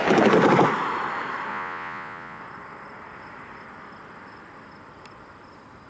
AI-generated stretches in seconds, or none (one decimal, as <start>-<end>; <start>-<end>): 1.5-2.4